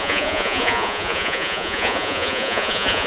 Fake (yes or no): yes